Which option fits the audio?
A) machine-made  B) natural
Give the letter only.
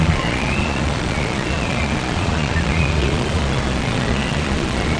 A